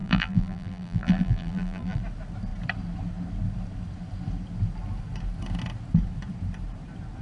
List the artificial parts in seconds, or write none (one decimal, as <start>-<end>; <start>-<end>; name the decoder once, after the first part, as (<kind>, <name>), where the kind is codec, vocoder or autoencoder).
0.0-2.0 (vocoder, BigVGAN v2)